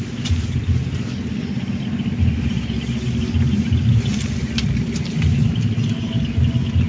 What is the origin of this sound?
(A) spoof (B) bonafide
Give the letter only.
B